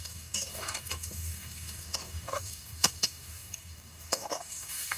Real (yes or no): no